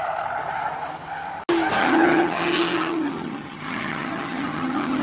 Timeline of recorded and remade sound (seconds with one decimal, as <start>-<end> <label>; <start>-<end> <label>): 0.0-1.8 recorded; 1.8-5.0 remade